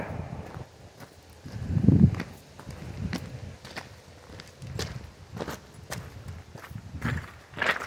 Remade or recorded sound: recorded